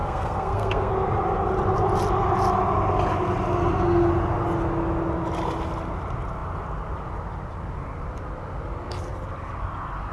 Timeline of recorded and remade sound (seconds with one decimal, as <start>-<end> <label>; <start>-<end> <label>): 0.0-0.9 remade; 0.9-10.1 recorded